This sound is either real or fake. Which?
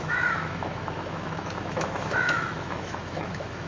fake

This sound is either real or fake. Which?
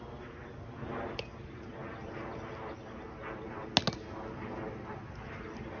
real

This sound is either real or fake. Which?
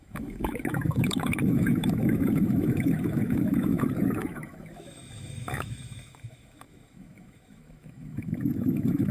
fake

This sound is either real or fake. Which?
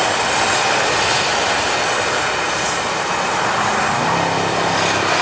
real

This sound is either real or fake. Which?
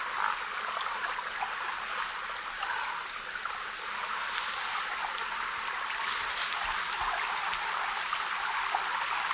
real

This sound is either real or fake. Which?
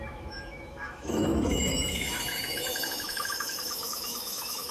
fake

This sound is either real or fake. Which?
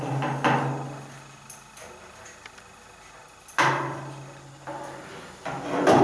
real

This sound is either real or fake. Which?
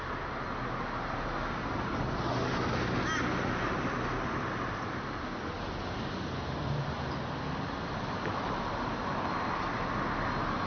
real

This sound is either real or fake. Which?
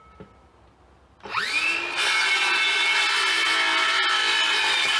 real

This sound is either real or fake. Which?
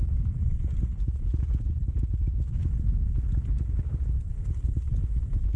real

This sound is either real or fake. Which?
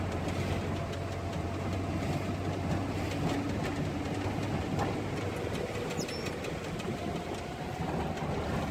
real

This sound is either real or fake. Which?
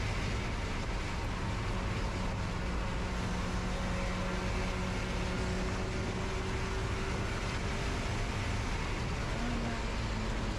real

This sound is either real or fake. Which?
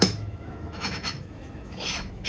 fake